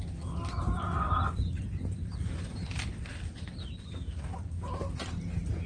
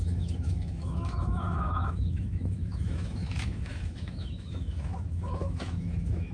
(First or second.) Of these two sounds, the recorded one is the first